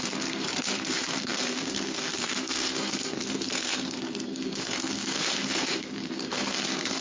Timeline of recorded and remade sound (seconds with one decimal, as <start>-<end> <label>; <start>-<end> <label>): 0.0-7.0 remade